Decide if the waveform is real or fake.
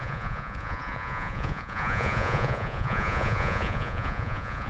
fake